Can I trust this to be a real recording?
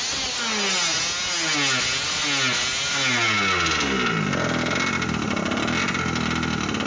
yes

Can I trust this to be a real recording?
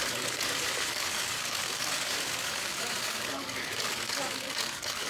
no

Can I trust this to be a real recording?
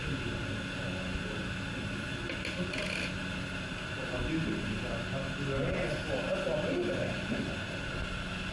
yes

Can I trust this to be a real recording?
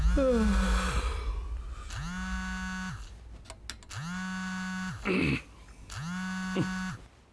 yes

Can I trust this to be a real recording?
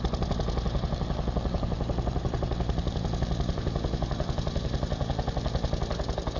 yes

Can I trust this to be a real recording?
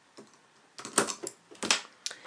yes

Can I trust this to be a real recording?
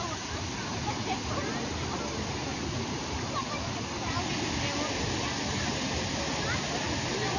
yes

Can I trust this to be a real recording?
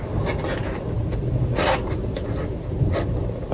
yes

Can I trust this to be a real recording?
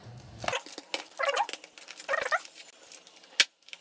yes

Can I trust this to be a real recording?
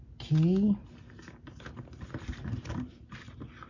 yes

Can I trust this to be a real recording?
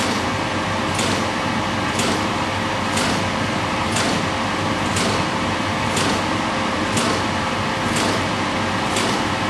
yes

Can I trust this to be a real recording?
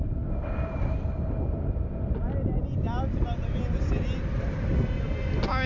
yes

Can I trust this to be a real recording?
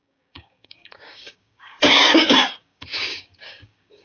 no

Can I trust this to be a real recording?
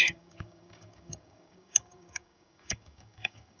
no